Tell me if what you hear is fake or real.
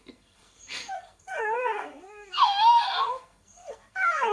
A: fake